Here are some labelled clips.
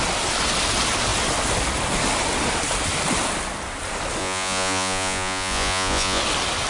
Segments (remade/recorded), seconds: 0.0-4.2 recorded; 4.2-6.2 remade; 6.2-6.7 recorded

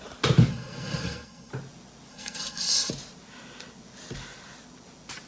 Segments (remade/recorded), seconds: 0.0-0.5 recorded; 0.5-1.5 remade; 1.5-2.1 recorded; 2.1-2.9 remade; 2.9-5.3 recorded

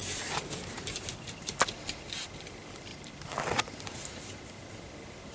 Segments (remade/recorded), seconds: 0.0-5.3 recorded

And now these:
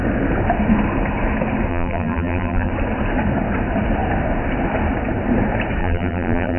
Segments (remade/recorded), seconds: 0.0-1.7 recorded; 1.7-2.7 remade; 2.7-5.8 recorded; 5.8-6.6 remade

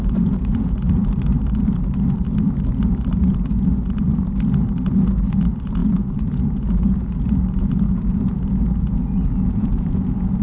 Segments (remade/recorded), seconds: 0.0-1.0 remade; 1.0-4.9 recorded; 4.9-10.4 remade